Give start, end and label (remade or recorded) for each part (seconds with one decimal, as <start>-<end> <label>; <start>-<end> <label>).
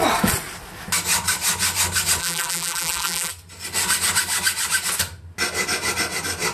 0.0-2.2 recorded; 2.2-3.3 remade; 3.3-6.5 recorded